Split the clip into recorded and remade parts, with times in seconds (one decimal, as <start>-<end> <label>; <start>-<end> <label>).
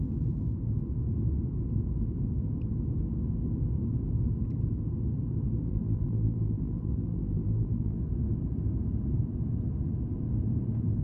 0.0-5.7 recorded; 5.7-8.0 remade; 8.0-11.0 recorded